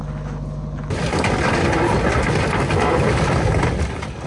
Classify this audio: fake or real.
real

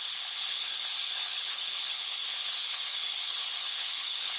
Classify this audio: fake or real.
fake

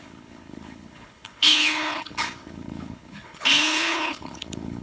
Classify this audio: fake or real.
fake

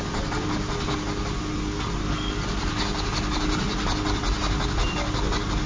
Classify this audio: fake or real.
real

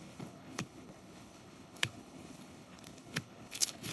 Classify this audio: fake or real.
fake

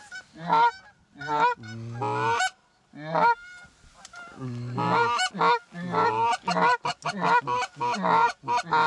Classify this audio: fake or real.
real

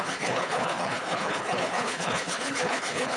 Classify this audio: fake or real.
fake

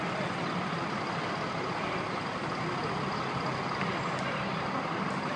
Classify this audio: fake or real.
real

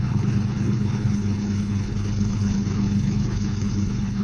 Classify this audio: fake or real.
fake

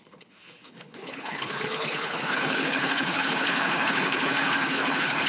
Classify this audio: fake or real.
fake